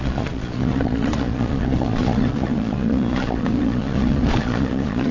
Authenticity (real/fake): fake